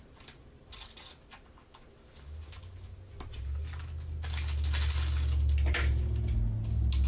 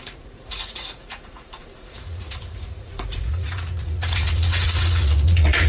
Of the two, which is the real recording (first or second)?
first